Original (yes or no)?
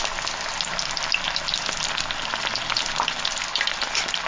yes